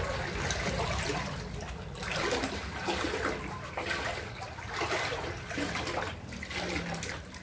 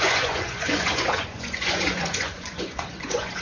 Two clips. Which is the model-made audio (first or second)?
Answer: second